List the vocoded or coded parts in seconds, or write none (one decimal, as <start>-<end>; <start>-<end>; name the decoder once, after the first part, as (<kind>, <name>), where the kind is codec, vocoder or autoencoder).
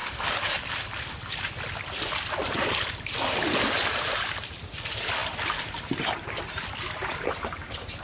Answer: 0.0-0.7 (codec, DAC)